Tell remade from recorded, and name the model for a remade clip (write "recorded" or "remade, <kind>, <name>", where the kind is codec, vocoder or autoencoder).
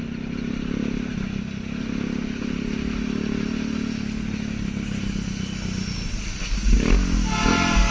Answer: recorded